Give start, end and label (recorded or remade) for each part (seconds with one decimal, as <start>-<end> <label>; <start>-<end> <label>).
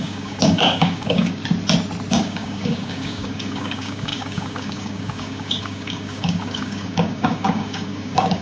0.0-1.4 remade; 1.4-2.1 recorded; 2.1-8.4 remade